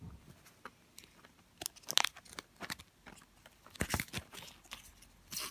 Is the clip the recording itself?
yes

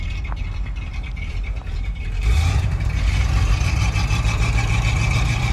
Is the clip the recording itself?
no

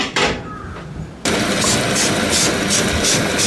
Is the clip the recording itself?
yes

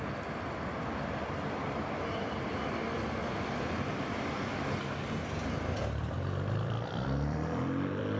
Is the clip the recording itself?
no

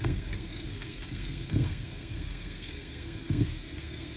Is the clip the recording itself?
no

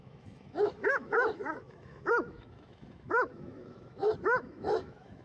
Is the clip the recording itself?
no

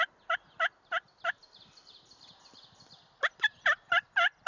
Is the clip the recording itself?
yes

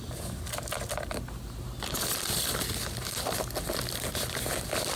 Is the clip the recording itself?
yes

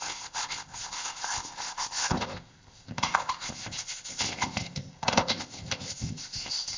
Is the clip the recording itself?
no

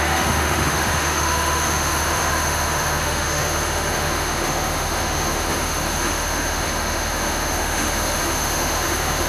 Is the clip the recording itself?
no